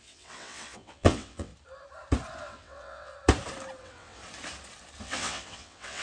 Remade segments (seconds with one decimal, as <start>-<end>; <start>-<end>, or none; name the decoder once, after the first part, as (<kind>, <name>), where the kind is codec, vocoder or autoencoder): 0.0-1.5 (vocoder, WaveNeXt); 2.4-3.1; 3.8-4.2; 5.0-6.0